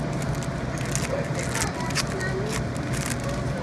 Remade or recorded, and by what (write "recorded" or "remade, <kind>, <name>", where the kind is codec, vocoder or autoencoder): recorded